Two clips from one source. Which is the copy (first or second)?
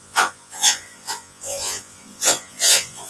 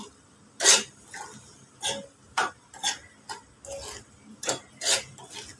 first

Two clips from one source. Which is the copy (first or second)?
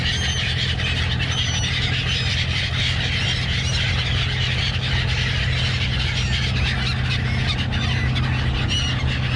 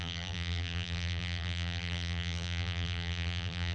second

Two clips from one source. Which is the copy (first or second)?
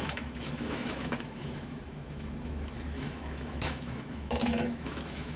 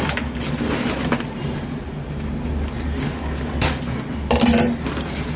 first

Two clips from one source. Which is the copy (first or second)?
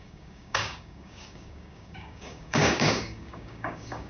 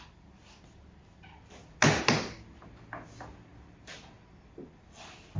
first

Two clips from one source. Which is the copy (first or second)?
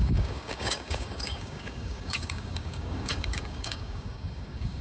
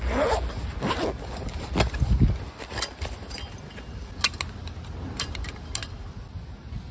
first